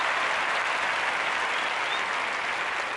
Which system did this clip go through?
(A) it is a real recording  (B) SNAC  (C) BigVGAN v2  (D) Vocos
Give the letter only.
A